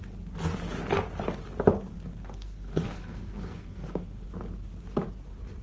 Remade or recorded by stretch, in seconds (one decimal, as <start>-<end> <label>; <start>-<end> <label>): 0.0-2.1 recorded; 2.1-4.3 remade; 4.3-5.6 recorded